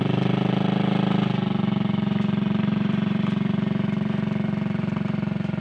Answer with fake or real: fake